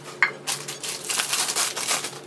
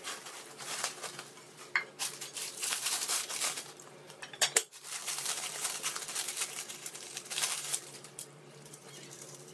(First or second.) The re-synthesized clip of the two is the second